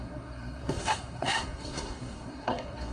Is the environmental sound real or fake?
fake